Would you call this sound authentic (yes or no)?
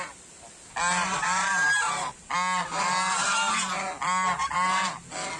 yes